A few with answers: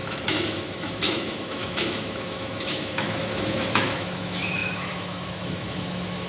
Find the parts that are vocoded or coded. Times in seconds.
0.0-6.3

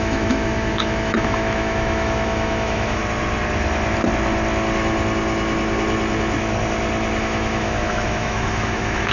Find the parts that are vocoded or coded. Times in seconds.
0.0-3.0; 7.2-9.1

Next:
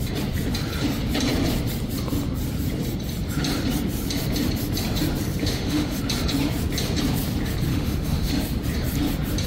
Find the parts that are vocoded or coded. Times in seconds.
5.4-6.0; 7.7-8.3

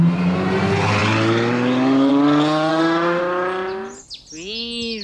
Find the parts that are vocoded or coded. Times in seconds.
2.7-3.2

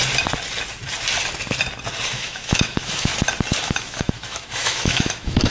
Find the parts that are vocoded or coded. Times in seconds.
2.1-3.1; 3.6-5.5

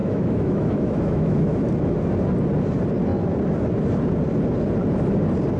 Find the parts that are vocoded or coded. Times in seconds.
0.0-1.7

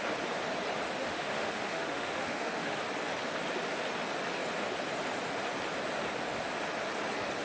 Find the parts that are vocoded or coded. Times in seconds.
1.0-2.8

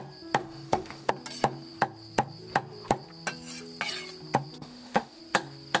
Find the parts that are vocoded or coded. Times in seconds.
0.4-1.1; 4.6-5.2